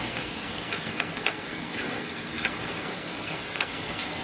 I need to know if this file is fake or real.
fake